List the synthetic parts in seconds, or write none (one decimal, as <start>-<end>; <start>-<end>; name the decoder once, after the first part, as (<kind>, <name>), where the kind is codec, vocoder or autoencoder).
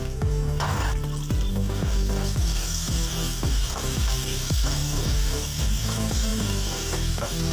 0.0-0.9 (codec, DAC); 1.5-7.5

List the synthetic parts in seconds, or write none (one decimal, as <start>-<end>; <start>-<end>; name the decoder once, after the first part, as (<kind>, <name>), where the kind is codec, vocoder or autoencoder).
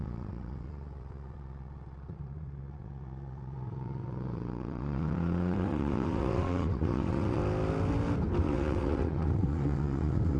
0.0-7.4 (vocoder, WaveNeXt); 8.4-10.4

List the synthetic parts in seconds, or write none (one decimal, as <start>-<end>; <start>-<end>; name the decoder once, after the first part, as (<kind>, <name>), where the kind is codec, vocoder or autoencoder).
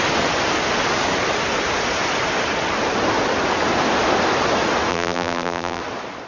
4.9-5.8 (vocoder, BigVGAN v2)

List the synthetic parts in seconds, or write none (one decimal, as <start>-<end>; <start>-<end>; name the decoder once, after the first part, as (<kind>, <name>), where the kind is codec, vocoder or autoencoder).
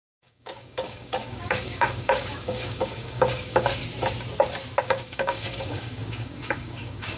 0.0-3.8 (codec, DAC); 4.8-7.2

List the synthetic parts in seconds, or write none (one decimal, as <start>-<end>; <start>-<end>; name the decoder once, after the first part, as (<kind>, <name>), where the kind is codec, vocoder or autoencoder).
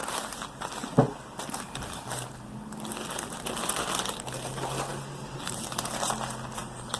none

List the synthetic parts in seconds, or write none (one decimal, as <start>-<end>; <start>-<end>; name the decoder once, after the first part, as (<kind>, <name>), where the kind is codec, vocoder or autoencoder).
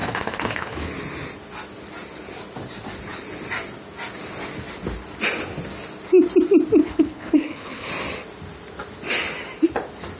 0.0-0.9 (codec, HILCodec); 6.8-7.9